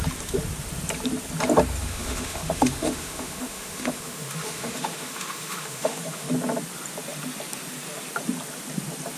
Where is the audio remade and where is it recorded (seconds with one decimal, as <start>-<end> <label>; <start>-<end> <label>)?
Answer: 0.0-1.8 recorded; 1.8-6.3 remade; 6.3-9.2 recorded